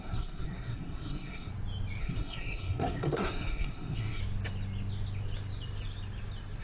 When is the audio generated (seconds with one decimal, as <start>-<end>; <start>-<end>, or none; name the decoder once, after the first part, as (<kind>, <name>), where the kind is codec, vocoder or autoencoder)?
0.0-1.5 (codec, SNAC); 2.0-4.2